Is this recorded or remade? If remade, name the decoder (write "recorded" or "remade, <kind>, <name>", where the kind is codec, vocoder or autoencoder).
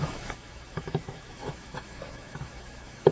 remade, autoencoder, DAC-VAE